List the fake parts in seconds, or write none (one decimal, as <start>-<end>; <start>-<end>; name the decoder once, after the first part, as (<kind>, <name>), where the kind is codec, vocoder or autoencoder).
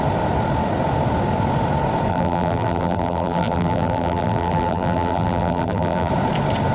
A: 2.1-6.1 (vocoder, BigVGAN v2)